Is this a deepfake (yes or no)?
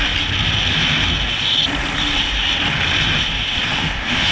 no